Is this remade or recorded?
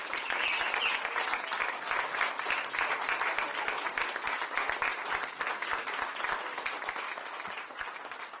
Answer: recorded